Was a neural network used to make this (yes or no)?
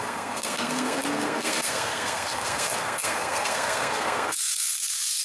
yes